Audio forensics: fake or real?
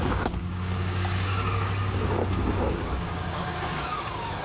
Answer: fake